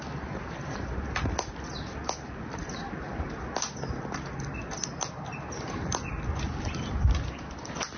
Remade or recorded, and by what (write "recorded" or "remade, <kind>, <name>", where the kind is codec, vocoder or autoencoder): recorded